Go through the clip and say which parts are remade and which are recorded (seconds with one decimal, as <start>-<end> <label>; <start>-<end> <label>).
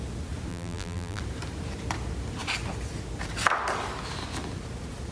0.0-0.5 recorded; 0.5-1.2 remade; 1.2-5.1 recorded